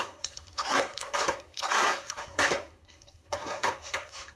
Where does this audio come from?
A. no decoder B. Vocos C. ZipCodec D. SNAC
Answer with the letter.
D